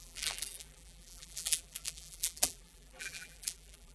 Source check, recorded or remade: remade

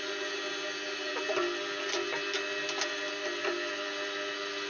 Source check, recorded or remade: recorded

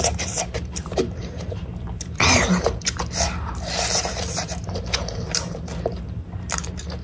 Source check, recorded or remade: remade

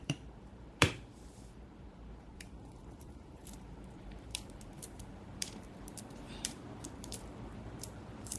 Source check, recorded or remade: remade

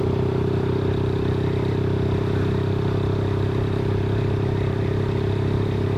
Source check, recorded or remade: remade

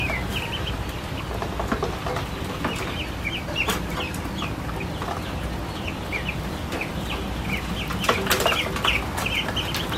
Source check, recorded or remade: recorded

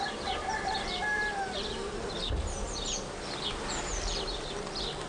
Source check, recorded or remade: remade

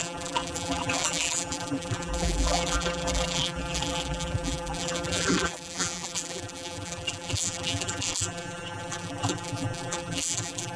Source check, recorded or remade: remade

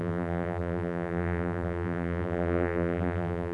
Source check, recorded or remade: remade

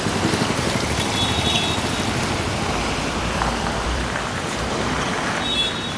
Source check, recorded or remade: remade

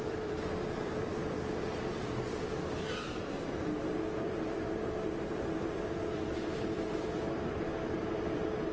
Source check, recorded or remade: remade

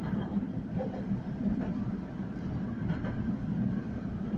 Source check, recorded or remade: remade